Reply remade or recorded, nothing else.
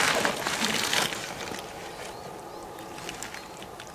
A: recorded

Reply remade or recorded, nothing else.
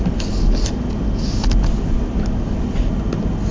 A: recorded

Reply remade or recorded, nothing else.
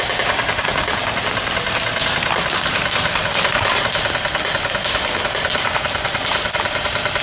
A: recorded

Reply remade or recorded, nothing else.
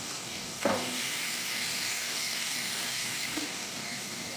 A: remade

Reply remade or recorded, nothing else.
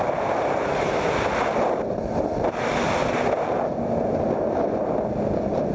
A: recorded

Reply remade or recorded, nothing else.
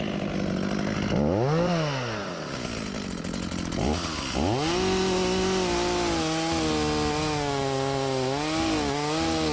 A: recorded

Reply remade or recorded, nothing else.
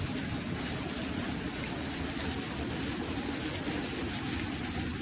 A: recorded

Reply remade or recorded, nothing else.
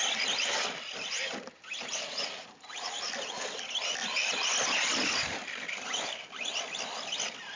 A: recorded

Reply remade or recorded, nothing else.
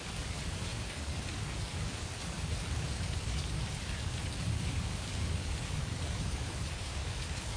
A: remade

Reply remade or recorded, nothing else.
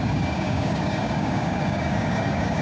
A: remade